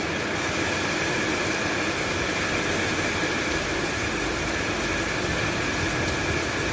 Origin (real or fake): real